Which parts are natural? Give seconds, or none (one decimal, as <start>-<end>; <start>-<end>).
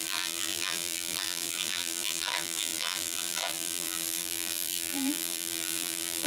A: none